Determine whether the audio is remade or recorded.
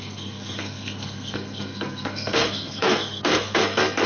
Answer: remade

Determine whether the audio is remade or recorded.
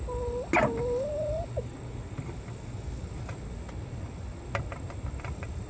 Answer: recorded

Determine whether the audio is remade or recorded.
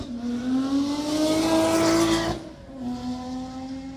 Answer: recorded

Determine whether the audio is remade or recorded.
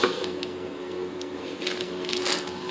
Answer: remade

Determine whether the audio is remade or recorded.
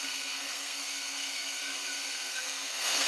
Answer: remade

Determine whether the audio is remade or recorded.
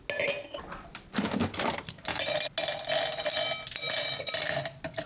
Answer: recorded